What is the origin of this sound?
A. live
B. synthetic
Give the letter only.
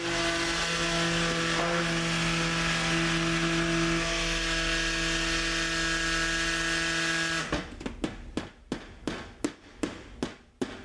A